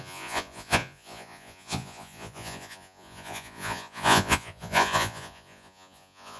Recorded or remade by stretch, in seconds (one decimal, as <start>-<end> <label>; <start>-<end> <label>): 0.0-6.4 remade